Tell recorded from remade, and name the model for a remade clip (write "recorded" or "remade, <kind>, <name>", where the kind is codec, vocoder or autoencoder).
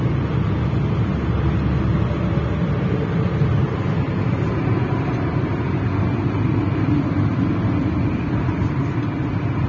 recorded